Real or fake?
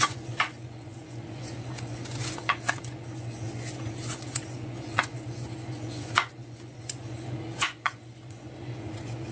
fake